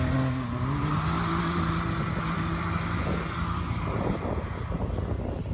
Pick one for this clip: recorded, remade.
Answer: recorded